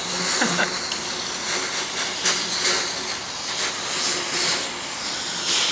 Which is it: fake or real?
real